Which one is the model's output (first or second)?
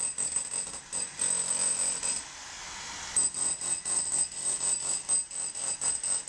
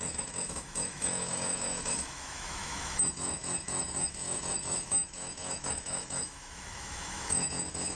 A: second